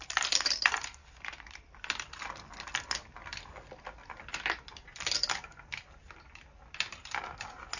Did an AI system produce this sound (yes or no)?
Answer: no